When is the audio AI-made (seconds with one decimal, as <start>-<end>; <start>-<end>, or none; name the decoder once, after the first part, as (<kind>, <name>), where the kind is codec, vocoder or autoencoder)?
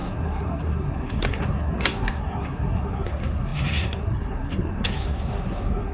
0.0-5.9 (codec, SNAC)